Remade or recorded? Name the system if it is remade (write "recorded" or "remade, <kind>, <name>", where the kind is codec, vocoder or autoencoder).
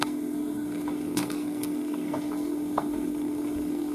remade, codec, SNAC